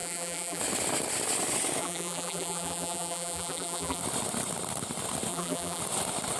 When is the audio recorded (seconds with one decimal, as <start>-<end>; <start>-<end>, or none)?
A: 0.6-1.8; 4.0-5.3; 5.8-6.4